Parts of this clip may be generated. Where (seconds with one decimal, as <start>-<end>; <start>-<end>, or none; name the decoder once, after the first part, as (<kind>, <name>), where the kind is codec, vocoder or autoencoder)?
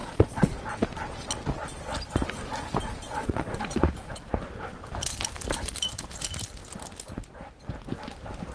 0.0-0.6 (vocoder, Vocos); 2.9-3.6